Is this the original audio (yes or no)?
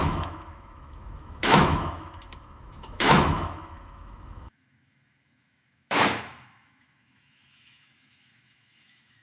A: no